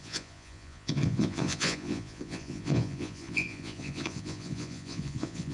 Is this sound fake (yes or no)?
yes